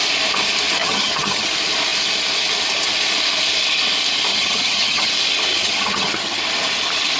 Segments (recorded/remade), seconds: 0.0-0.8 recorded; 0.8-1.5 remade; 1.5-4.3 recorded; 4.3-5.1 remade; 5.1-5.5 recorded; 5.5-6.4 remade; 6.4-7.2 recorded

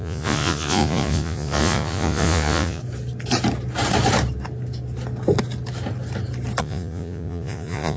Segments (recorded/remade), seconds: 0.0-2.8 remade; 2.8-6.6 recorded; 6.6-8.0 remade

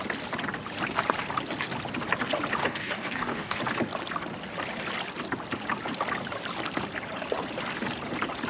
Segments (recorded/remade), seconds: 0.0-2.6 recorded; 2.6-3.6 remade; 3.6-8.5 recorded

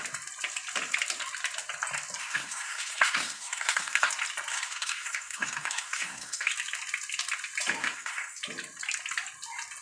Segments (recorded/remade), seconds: 0.0-2.2 recorded; 2.2-4.1 remade; 4.1-4.5 recorded; 4.5-6.5 remade; 6.5-7.8 recorded; 7.8-8.4 remade; 8.4-9.8 recorded